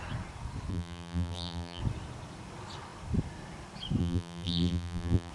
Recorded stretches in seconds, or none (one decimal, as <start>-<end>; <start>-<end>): 0.0-0.7; 1.8-4.0